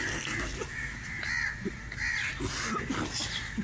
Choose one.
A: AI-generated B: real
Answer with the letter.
B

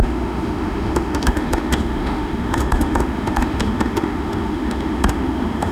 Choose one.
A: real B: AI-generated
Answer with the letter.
B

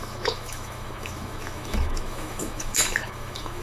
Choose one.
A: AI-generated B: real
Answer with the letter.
A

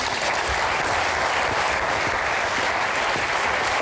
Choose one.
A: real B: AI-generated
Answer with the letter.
A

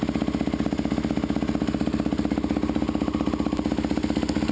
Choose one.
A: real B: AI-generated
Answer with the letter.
A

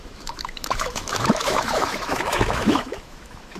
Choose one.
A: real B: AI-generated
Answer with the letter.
B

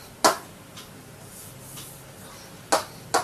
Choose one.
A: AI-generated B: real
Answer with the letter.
B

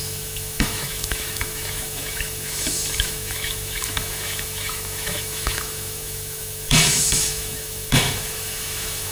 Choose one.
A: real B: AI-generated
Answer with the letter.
B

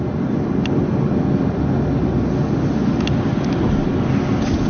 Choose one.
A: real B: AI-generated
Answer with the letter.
A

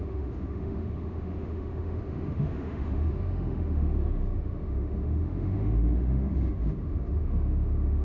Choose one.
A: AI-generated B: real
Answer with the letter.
A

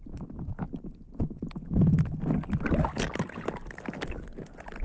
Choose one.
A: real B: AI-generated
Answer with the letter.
A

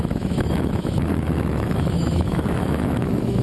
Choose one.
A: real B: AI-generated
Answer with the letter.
B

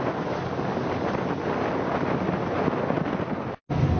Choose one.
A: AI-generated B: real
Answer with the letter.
B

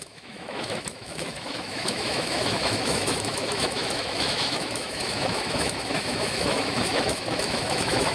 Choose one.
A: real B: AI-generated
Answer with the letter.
B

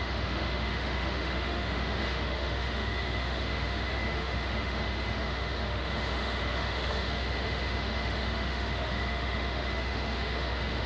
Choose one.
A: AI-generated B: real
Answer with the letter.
A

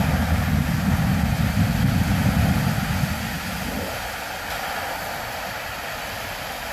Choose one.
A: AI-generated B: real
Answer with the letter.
B